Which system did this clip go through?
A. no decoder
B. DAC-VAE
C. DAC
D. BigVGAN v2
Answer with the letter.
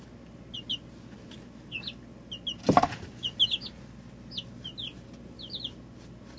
A